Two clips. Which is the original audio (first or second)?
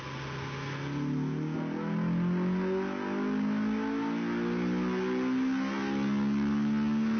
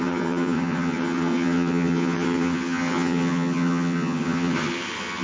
first